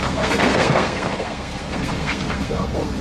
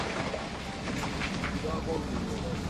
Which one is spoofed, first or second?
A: first